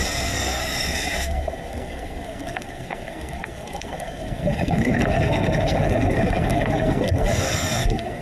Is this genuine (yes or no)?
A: no